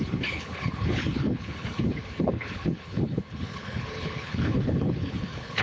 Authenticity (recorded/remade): remade